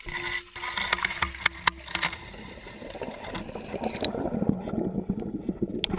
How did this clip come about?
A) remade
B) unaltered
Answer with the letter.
B